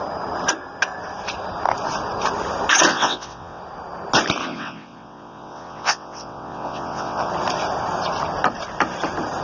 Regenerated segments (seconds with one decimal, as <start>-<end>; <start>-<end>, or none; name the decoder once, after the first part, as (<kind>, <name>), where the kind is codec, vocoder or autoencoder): 2.9-3.6 (vocoder, WaveNeXt); 4.4-7.3